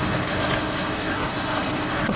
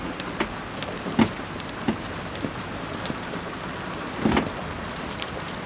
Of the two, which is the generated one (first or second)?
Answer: first